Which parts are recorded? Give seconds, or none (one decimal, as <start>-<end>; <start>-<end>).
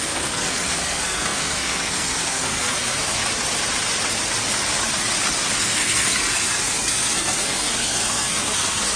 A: 3.2-5.6